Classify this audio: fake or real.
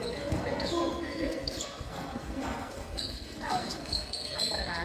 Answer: fake